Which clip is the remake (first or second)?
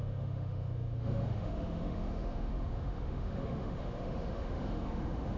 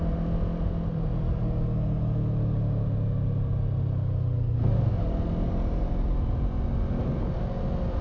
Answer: first